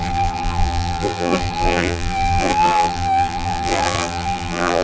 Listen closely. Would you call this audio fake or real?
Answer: fake